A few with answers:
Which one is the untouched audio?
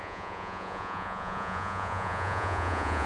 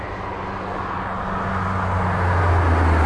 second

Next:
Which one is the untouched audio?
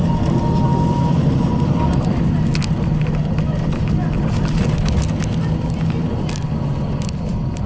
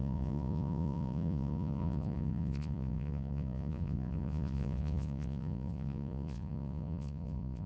first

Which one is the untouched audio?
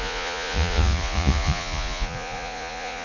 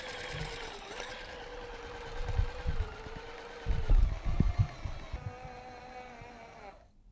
second